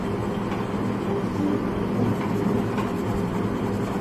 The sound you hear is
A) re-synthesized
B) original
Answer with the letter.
B